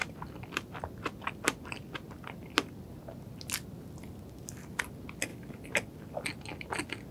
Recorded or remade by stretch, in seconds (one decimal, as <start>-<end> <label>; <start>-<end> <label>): 0.0-7.1 recorded